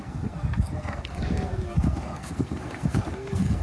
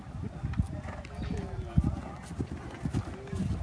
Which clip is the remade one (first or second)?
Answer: first